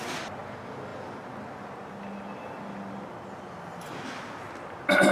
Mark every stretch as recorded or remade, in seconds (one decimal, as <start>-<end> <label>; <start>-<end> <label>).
0.0-5.1 recorded